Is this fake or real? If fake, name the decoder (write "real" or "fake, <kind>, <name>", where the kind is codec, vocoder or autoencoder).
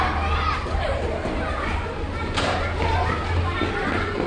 real